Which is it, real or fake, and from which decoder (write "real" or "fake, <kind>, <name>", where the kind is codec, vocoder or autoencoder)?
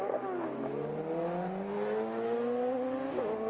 real